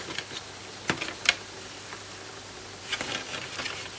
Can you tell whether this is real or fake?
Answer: fake